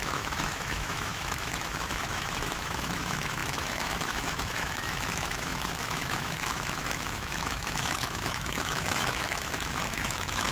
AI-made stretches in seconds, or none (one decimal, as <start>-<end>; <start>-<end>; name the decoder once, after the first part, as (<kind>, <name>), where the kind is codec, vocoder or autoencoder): 0.0-10.5 (autoencoder, DAC-VAE)